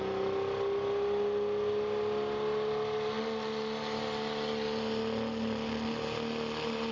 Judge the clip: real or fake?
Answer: real